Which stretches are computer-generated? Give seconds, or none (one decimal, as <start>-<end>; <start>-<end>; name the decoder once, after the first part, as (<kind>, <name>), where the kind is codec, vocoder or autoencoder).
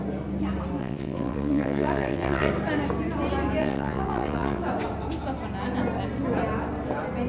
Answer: 0.8-2.5 (vocoder, WaveNeXt); 3.6-4.6